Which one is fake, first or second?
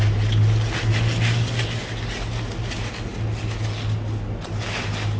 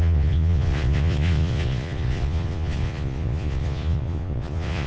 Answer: second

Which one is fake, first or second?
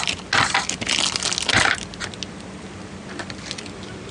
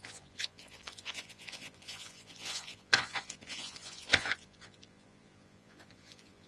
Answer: second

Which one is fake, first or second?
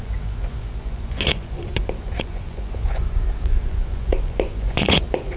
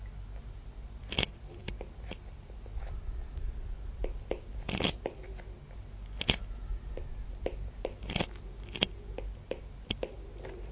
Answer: first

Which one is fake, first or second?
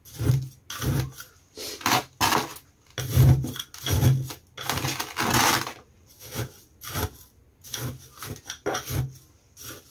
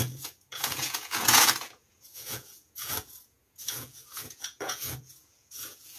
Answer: second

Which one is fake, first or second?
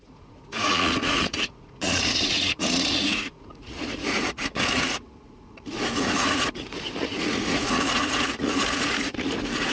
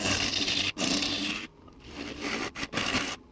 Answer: first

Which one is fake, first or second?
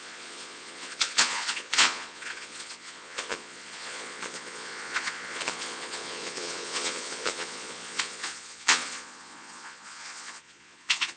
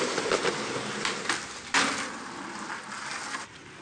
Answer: first